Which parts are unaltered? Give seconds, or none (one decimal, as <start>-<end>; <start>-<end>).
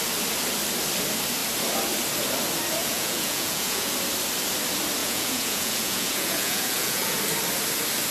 0.0-2.8; 3.9-5.0; 7.2-8.1